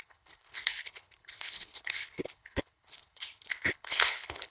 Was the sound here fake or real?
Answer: fake